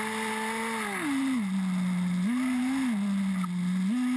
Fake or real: real